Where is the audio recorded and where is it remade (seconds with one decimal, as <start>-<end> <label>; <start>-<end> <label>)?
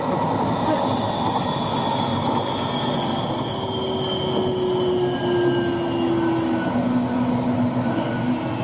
0.0-8.6 recorded